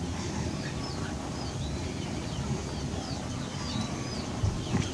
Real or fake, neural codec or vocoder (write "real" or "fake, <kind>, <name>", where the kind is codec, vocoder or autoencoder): real